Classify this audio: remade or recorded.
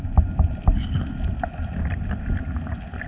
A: recorded